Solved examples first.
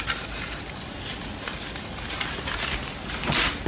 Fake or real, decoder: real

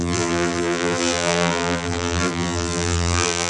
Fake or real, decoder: fake, vocoder, BigVGAN v2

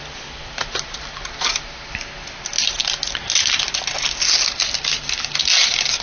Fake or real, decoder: real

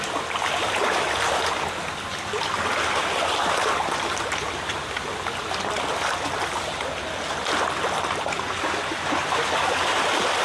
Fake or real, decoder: real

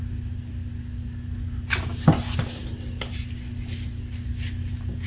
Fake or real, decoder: real